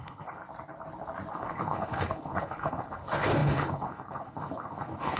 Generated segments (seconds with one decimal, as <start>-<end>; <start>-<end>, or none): 0.0-0.4; 1.3-5.2